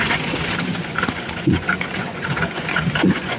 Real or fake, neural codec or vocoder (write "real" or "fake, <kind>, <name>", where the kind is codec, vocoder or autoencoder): fake, vocoder, Vocos